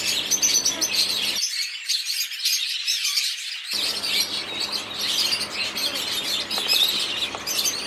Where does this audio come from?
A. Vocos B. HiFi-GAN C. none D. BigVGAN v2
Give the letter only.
C